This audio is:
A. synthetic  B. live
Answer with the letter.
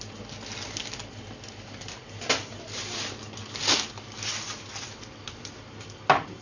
B